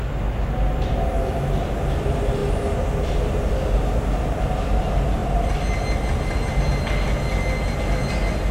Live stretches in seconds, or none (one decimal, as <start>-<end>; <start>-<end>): 0.0-8.5